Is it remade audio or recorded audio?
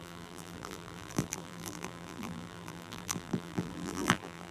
remade